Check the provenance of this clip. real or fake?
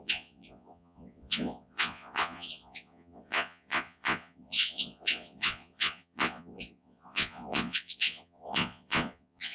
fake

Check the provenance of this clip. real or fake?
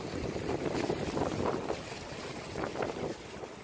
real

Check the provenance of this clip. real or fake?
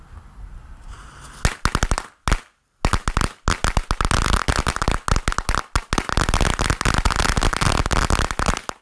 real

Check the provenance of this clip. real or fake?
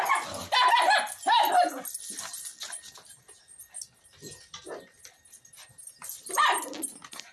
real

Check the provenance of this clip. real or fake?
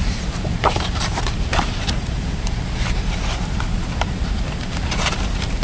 fake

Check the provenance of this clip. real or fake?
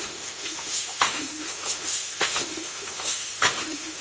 fake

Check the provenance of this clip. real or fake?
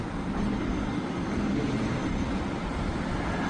real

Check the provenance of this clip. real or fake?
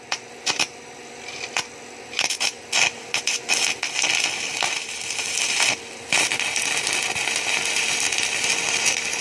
real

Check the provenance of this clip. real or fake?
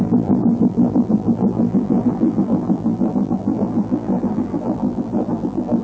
fake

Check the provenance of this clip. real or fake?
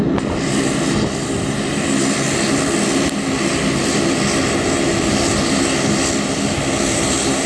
real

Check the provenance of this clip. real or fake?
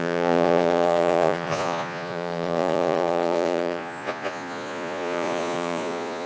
fake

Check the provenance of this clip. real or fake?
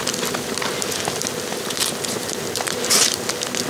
real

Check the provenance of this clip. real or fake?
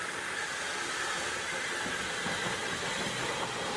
real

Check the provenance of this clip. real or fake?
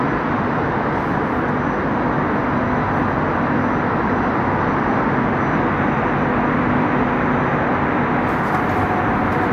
real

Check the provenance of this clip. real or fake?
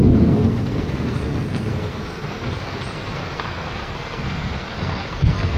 fake